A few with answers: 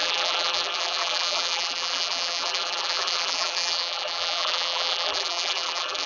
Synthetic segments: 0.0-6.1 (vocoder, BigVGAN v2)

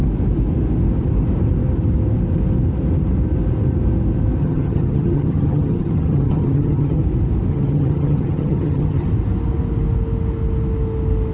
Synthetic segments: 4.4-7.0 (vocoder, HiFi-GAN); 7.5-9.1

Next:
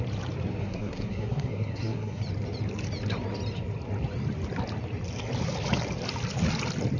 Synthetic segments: 0.6-2.2 (codec, SNAC)

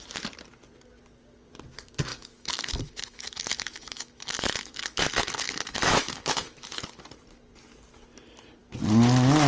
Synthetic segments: 2.1-6.7 (autoencoder, DAC-VAE)